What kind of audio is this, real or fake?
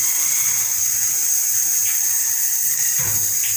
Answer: real